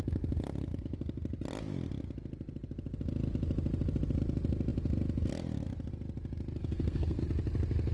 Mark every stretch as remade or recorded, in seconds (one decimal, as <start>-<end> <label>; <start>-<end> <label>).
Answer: 0.0-6.6 recorded; 6.6-7.2 remade; 7.2-7.9 recorded